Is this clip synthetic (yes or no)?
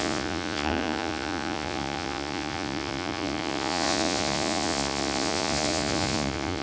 yes